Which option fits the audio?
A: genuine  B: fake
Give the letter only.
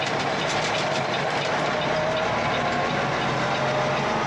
A